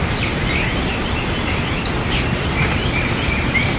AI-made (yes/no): no